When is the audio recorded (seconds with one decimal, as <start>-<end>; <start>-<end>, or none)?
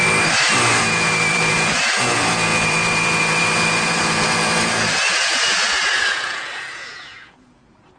0.0-0.8